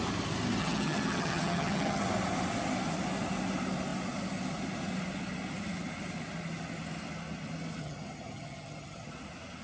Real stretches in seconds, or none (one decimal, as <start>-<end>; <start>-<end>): 0.0-0.6; 2.0-7.8; 9.1-9.6